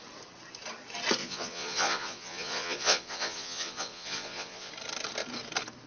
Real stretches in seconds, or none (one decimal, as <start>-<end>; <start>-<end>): 0.0-1.2; 4.7-5.9